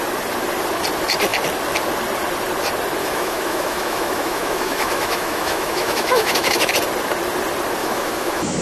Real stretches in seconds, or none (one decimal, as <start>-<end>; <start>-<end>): 0.0-3.0; 6.7-7.8